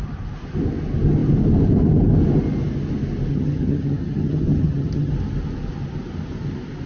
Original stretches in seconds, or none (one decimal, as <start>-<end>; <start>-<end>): 0.0-3.3; 5.1-6.9